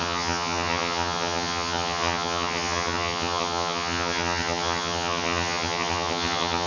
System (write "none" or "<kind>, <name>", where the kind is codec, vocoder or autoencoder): vocoder, HiFi-GAN